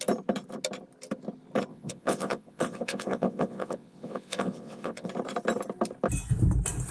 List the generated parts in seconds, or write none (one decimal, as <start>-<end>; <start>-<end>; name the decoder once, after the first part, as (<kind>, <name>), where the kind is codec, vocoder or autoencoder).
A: 1.7-5.1 (vocoder, WaveNeXt)